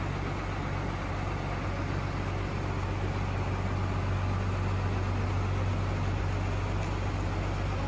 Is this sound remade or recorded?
recorded